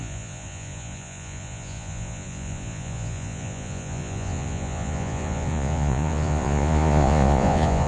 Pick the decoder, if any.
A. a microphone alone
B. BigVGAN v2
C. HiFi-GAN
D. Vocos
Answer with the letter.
D